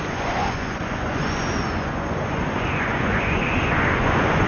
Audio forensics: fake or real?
fake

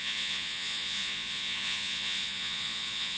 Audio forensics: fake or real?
fake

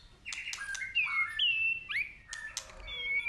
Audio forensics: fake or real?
real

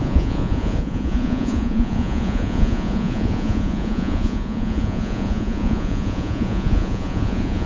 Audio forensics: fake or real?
fake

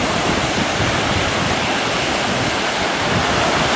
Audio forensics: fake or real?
real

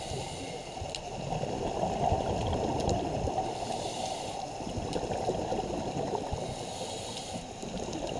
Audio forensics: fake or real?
real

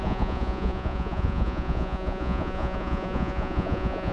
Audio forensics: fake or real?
fake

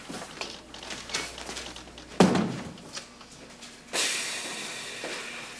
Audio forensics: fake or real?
real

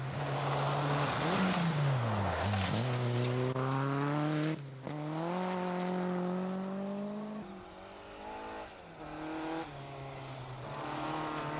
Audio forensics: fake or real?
real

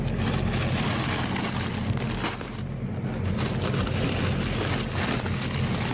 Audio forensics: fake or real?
real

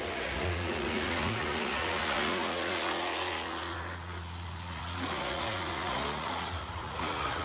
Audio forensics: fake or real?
fake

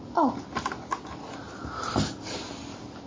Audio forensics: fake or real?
real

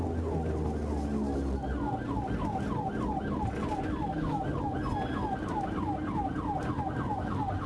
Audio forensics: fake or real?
real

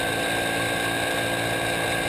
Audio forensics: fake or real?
real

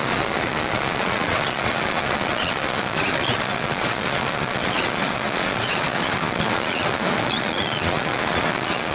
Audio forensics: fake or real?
fake